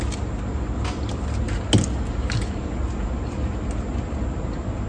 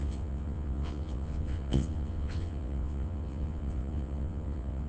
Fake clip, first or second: second